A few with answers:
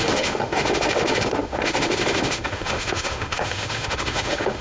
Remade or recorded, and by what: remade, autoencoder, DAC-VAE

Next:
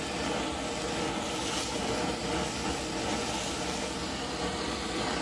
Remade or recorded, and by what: recorded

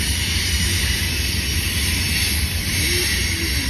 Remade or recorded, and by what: recorded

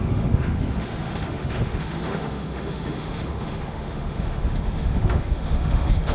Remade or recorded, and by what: remade, autoencoder, DAC-VAE